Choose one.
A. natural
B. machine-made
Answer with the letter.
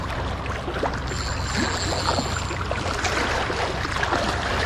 A